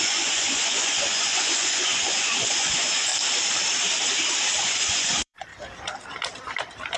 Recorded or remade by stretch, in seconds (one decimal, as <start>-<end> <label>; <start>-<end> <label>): 0.0-3.1 remade; 3.1-4.6 recorded; 4.6-5.5 remade; 5.5-7.0 recorded